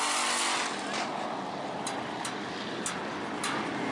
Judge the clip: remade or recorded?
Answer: recorded